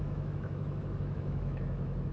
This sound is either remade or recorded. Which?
remade